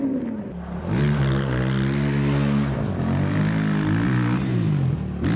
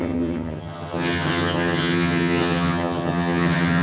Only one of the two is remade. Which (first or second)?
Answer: second